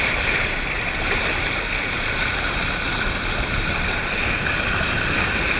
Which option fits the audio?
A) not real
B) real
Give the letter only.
B